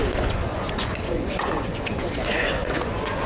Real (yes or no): no